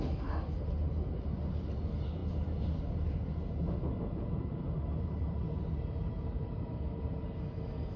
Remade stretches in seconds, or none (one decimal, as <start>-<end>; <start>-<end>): none